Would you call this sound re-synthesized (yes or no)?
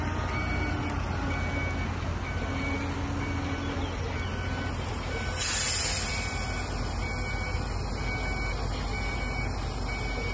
no